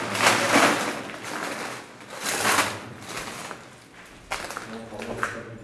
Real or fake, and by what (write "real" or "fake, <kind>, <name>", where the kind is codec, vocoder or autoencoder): real